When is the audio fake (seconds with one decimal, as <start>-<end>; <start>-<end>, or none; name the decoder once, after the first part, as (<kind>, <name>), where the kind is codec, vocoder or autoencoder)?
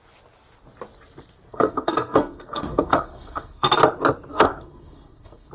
1.5-3.7 (codec, SNAC); 4.3-5.5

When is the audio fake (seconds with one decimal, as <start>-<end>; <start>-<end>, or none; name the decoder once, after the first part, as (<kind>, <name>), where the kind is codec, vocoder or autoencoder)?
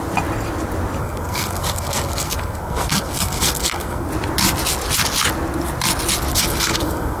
1.0-4.1 (codec, SNAC); 6.3-7.2